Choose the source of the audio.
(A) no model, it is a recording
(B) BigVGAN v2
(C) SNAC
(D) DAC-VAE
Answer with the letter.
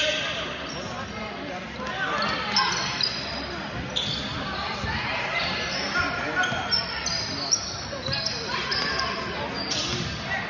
A